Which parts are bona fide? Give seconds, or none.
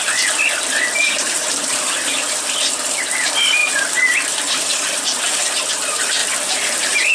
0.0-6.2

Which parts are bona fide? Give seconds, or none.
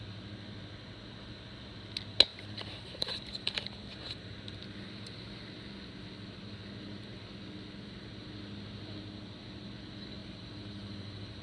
0.0-2.3; 4.3-10.2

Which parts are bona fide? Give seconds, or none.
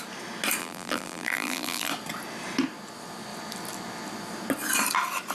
0.0-0.6; 1.9-5.3